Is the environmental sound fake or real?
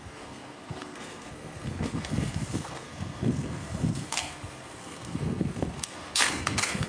fake